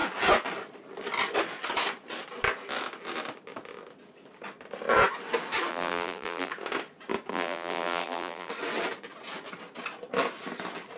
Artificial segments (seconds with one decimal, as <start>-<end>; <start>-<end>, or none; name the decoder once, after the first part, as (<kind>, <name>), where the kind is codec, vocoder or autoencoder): 5.7-6.5 (vocoder, BigVGAN v2); 7.3-8.5